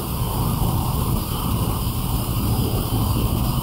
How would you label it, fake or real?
fake